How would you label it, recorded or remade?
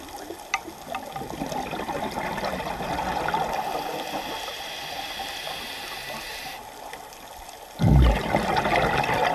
recorded